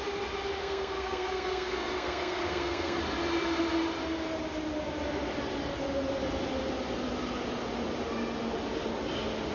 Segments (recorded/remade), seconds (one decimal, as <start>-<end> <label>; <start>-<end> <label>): 0.0-0.6 recorded; 0.6-3.0 remade; 3.0-9.5 recorded